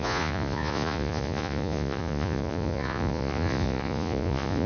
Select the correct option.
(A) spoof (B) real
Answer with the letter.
A